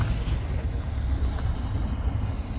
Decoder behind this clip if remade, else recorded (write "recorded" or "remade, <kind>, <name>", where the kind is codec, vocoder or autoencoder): recorded